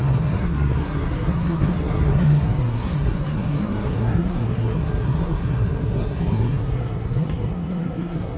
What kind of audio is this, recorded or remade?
remade